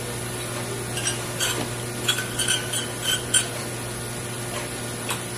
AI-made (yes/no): no